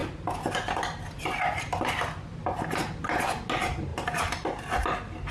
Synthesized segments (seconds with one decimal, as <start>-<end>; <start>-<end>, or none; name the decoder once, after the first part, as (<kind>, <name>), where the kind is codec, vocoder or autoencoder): none